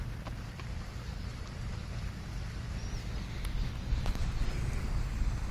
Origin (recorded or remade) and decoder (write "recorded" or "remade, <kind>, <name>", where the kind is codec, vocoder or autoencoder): recorded